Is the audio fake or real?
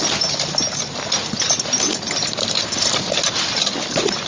real